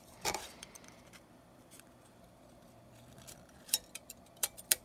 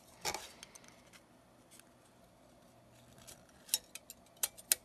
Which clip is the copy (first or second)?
first